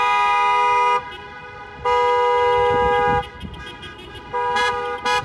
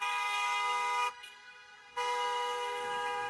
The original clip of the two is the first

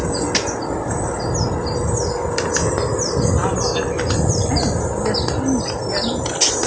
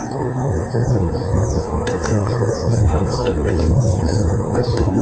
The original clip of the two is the first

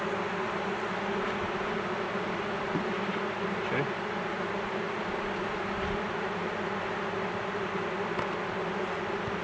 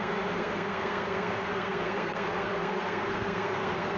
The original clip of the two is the first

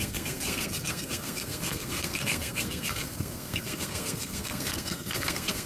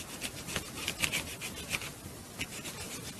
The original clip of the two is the second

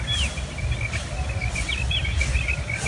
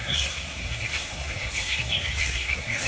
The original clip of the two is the first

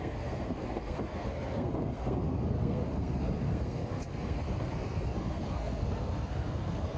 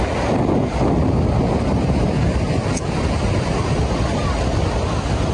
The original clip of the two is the second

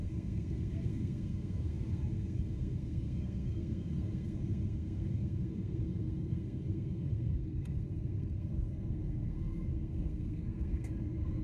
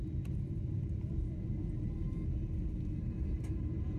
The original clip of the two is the second